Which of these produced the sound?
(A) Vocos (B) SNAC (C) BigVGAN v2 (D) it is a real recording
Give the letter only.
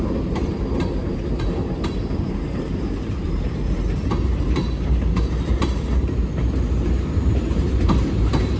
C